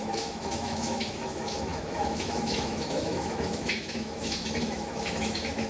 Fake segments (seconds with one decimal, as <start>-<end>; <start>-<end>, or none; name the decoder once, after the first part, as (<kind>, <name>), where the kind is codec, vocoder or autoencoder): 0.0-5.7 (autoencoder, DAC-VAE)